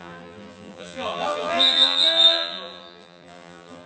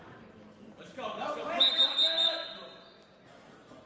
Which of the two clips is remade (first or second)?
first